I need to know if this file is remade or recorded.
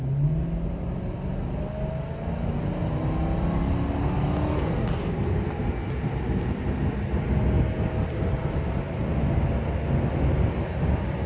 recorded